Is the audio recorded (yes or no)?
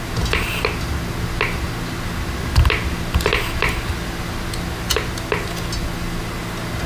yes